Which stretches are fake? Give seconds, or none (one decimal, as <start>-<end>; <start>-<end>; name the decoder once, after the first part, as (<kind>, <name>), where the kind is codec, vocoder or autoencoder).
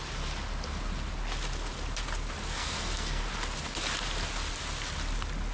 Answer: 2.5-3.2 (codec, SNAC)